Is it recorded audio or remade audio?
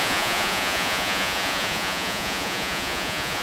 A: remade